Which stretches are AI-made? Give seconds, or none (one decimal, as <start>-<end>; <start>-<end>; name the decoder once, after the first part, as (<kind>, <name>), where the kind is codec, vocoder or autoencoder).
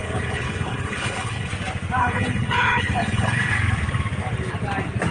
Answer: 0.0-1.5 (codec, HILCodec); 2.0-3.5